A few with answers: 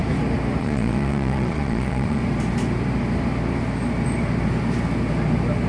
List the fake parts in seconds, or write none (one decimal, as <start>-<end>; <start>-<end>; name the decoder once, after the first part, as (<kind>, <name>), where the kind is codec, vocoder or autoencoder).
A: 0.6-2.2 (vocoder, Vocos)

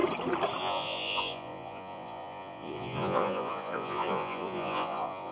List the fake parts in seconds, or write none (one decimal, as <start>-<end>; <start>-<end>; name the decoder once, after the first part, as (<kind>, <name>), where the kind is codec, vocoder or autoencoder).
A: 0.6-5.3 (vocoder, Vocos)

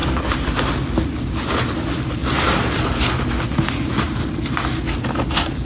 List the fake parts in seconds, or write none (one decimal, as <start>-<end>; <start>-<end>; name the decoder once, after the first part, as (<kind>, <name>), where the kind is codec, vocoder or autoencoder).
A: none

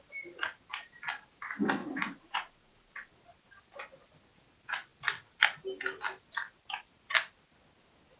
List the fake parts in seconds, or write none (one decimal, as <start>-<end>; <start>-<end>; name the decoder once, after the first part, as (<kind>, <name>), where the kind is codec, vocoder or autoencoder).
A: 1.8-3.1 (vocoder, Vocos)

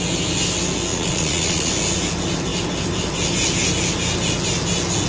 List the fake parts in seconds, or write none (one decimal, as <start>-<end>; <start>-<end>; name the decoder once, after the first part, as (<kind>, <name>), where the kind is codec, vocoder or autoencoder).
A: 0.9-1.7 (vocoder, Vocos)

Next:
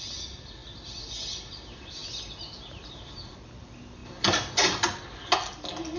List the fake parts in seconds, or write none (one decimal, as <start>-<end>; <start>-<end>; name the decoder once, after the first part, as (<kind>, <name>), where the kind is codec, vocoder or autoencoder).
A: none

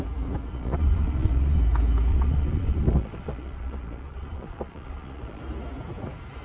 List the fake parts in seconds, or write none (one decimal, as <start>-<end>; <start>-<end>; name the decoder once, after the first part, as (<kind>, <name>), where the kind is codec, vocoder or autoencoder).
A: 0.5-1.6 (vocoder, Vocos); 2.1-5.4